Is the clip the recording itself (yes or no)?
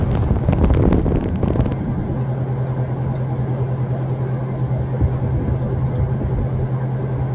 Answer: yes